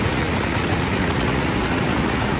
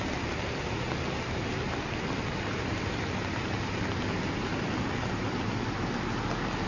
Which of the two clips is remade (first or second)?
first